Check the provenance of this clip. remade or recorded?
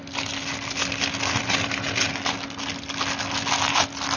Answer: recorded